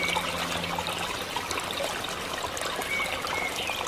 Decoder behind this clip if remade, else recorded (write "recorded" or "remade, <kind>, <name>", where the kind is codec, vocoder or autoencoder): recorded